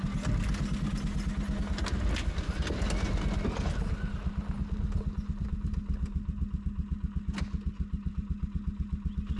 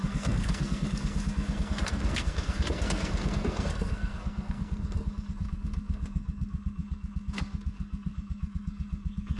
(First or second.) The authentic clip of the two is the first